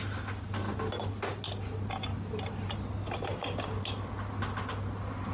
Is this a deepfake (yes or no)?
no